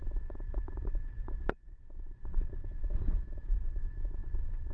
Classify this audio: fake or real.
fake